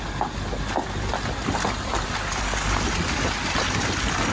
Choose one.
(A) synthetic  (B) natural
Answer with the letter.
B